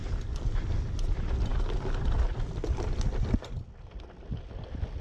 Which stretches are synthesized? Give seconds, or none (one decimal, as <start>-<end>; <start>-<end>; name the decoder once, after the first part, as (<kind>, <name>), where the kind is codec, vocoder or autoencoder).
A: none